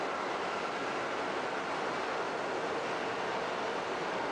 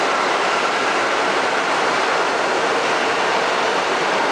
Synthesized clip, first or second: second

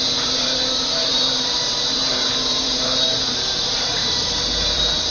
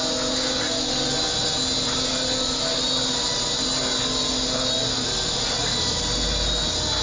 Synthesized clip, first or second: first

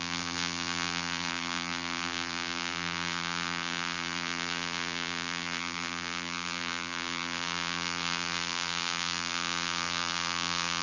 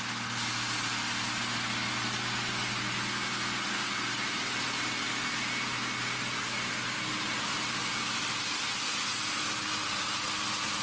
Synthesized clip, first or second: first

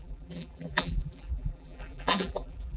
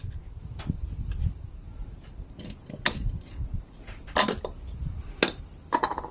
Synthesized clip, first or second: first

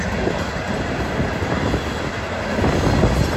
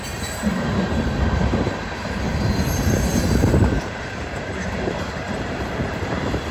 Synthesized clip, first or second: second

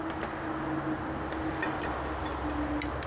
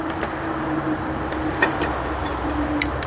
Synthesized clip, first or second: second